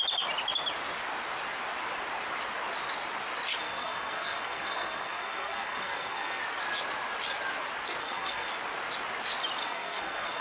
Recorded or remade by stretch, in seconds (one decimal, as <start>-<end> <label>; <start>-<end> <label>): 0.0-3.6 recorded; 3.6-6.4 remade; 6.4-8.0 recorded; 8.0-8.5 remade; 8.5-9.6 recorded; 9.6-10.4 remade

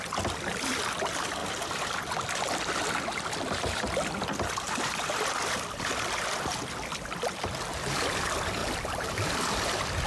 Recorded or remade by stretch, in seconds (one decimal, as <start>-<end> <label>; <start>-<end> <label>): 0.0-10.1 recorded